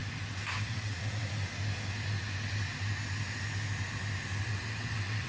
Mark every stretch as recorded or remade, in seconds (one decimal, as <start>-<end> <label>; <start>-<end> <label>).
0.0-0.6 recorded; 0.6-1.2 remade; 1.2-4.4 recorded; 4.4-5.3 remade

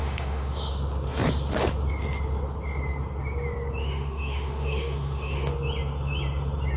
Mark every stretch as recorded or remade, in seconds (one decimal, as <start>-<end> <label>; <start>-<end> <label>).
0.0-0.7 remade; 0.7-3.8 recorded; 3.8-5.5 remade; 5.5-6.8 recorded

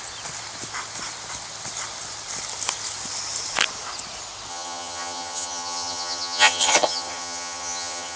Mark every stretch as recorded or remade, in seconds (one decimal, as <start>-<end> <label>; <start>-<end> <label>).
0.0-4.5 recorded; 4.5-8.2 remade

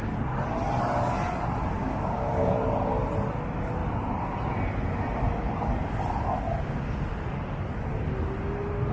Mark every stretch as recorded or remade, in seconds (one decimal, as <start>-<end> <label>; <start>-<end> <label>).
0.0-1.8 recorded; 1.8-2.5 remade; 2.5-8.9 recorded

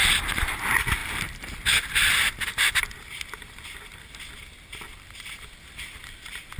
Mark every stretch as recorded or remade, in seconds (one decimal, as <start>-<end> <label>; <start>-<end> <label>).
0.0-6.6 recorded

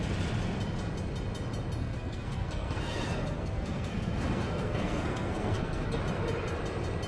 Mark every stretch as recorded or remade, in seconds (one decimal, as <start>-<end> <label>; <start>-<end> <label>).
0.0-1.8 recorded; 1.8-6.0 remade; 6.0-7.1 recorded

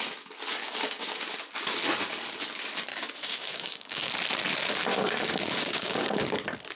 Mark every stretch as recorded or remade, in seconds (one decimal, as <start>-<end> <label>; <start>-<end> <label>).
0.0-0.5 recorded; 0.5-1.1 remade; 1.1-2.9 recorded; 2.9-4.1 remade; 4.1-4.9 recorded; 4.9-6.2 remade; 6.2-6.8 recorded